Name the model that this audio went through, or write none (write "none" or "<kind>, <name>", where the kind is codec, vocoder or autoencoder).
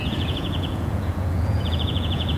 vocoder, Vocos